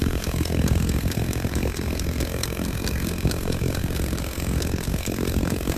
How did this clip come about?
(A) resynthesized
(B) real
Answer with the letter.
A